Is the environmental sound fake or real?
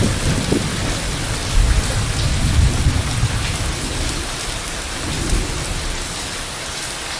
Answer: real